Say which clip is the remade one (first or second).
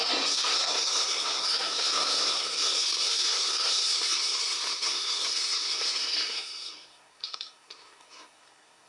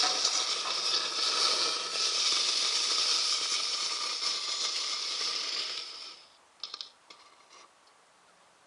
first